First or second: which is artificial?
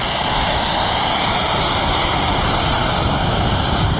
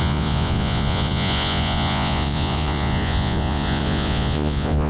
second